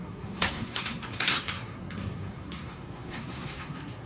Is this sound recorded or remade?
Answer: remade